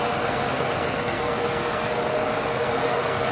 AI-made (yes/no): yes